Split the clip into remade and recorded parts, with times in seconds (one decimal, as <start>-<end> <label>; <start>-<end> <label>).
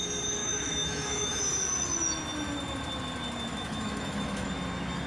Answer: 0.0-0.4 recorded; 0.4-1.4 remade; 1.4-3.5 recorded; 3.5-4.5 remade; 4.5-5.1 recorded